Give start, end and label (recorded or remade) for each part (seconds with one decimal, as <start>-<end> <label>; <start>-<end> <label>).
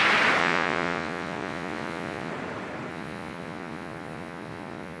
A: 0.0-0.4 recorded; 0.4-2.3 remade; 2.3-2.9 recorded; 2.9-5.0 remade